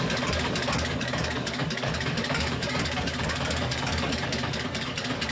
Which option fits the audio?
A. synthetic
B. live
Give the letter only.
A